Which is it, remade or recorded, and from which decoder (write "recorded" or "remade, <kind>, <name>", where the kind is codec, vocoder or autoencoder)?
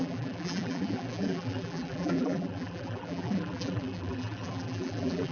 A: remade, vocoder, BigVGAN v2